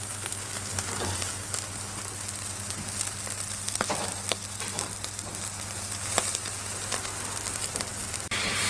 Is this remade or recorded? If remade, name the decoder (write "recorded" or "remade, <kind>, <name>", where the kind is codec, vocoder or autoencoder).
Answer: recorded